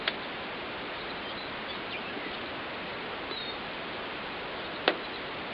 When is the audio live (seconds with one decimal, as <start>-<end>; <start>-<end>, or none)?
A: 0.0-1.4; 2.1-2.9; 4.3-5.5